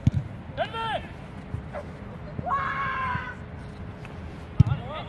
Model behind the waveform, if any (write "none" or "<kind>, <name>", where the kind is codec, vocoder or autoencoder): none